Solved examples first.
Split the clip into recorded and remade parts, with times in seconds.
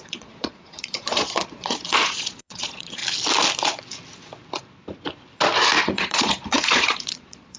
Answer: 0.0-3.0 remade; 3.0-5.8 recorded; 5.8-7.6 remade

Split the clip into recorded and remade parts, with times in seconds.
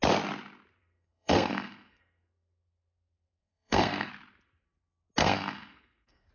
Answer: 0.0-0.8 recorded; 0.8-4.1 remade; 4.1-5.2 recorded; 5.2-6.3 remade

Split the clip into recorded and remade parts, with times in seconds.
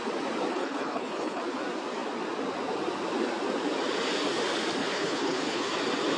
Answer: 0.0-0.5 recorded; 0.5-1.4 remade; 1.4-4.8 recorded; 4.8-5.7 remade; 5.7-6.2 recorded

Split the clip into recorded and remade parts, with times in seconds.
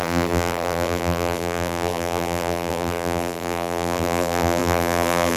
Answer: 0.0-5.4 remade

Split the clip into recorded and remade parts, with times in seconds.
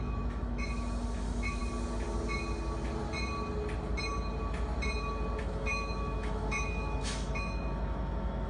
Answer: 0.0-1.6 remade; 1.6-5.4 recorded; 5.4-8.5 remade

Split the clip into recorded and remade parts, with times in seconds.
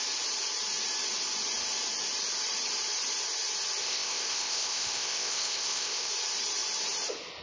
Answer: 0.0-3.8 recorded; 3.8-6.1 remade; 6.1-7.4 recorded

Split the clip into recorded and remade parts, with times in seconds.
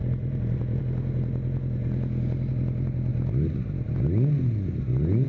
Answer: 0.0-0.8 remade; 0.8-5.3 recorded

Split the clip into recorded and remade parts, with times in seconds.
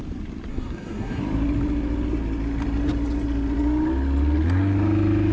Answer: 0.0-0.5 recorded; 0.5-1.2 remade; 1.2-5.3 recorded